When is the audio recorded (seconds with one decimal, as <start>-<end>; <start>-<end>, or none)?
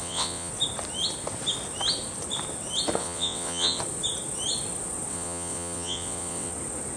0.5-3.0; 3.8-5.1; 6.5-7.0